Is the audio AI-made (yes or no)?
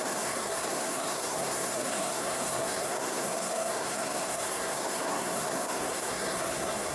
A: yes